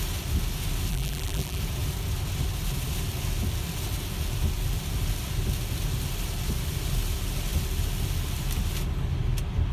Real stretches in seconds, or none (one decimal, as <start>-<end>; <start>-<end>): 0.0-0.9; 1.6-9.7